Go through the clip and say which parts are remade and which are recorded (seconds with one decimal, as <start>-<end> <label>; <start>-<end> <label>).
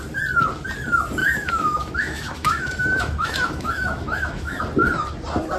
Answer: 0.0-1.2 recorded; 1.2-4.6 remade; 4.6-5.6 recorded